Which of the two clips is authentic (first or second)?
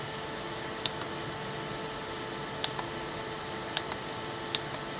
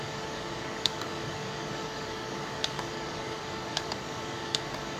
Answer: first